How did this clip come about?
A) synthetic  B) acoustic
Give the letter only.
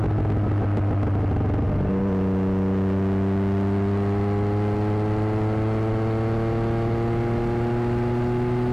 B